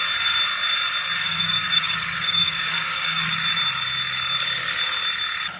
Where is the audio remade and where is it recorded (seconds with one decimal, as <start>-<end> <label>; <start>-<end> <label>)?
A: 0.0-1.2 recorded; 1.2-3.2 remade; 3.2-5.6 recorded